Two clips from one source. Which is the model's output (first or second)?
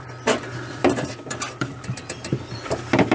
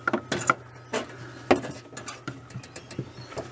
first